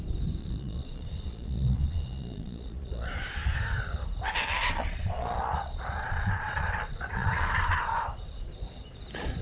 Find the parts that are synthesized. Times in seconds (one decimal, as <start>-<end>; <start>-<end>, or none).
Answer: 0.4-3.3; 4.6-8.0

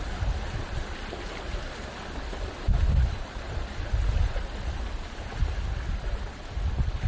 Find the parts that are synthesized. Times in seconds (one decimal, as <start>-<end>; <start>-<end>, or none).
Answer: none

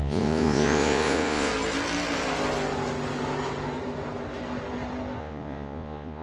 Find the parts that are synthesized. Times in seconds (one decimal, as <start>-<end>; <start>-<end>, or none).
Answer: 0.0-1.5; 5.2-6.2

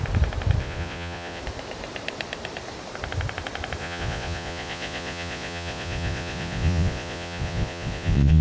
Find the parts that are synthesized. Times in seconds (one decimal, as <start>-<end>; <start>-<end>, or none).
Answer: 0.6-1.4; 3.8-8.4

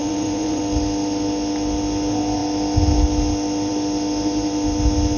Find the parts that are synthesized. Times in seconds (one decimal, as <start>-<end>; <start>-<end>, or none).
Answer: 0.0-0.6

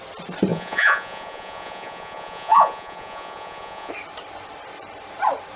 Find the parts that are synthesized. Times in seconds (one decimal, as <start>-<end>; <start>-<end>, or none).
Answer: 0.5-3.9